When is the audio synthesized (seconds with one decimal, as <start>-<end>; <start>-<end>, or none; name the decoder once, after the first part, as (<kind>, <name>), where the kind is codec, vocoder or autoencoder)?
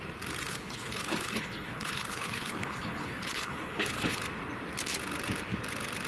0.5-4.2 (codec, HILCodec)